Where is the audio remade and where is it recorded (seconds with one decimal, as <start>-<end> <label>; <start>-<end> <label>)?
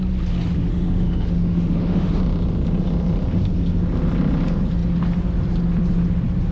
0.0-0.7 recorded; 0.7-2.2 remade; 2.2-6.5 recorded